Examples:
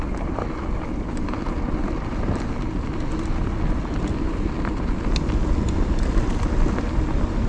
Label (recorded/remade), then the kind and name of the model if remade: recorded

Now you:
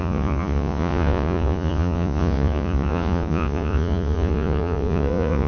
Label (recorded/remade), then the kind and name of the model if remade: remade, vocoder, Vocos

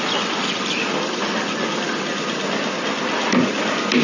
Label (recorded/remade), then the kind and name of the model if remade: recorded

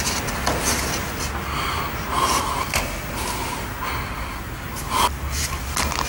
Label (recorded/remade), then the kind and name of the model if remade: recorded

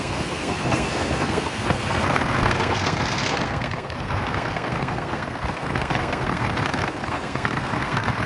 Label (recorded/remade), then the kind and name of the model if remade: remade, codec, SNAC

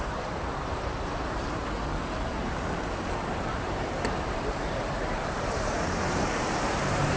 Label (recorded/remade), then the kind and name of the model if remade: remade, vocoder, BigVGAN v2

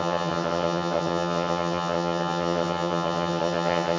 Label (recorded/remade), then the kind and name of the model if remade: remade, vocoder, HiFi-GAN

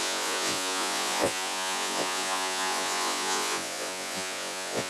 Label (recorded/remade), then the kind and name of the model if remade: remade, vocoder, Vocos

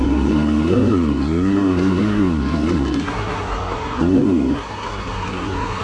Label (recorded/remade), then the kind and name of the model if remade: remade, codec, SNAC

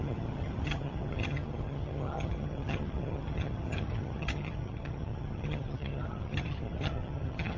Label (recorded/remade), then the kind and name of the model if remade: remade, vocoder, HiFi-GAN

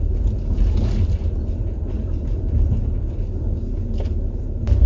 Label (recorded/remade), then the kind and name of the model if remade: recorded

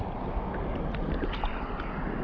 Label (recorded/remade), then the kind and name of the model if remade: recorded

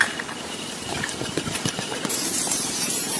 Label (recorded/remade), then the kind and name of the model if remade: remade, vocoder, BigVGAN v2